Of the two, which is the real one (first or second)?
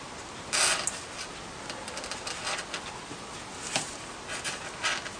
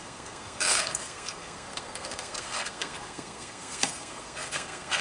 first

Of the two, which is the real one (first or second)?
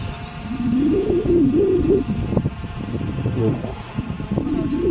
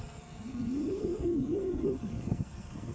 first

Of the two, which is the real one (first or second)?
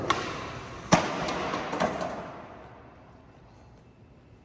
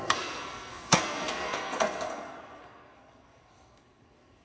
first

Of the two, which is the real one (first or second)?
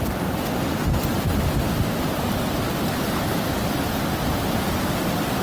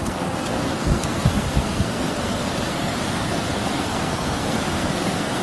first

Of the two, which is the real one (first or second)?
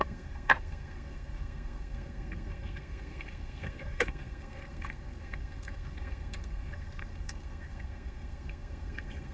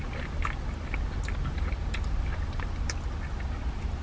second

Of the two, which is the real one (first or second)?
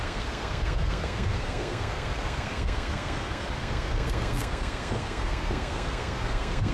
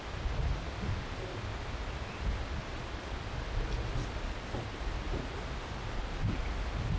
second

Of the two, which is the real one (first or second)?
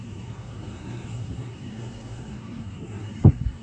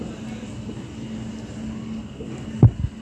second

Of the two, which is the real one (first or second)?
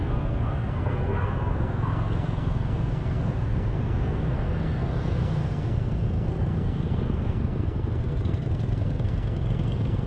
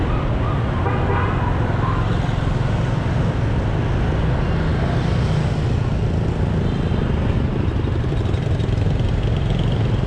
second